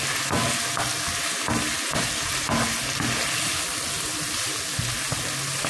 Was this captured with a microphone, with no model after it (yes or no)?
yes